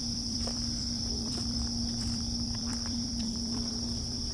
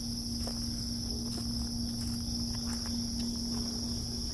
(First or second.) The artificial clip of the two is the first